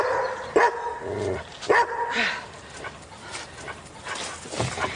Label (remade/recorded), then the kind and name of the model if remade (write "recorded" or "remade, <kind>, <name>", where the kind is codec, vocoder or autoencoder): recorded